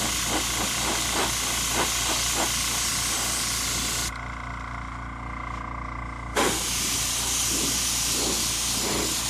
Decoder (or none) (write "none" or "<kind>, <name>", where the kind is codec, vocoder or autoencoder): none